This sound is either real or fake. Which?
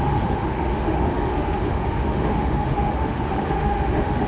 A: fake